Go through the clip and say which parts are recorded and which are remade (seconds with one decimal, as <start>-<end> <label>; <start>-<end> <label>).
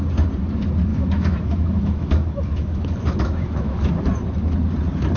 0.0-0.9 recorded; 0.9-4.0 remade; 4.0-5.2 recorded